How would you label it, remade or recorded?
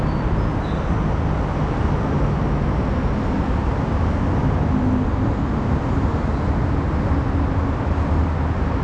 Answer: recorded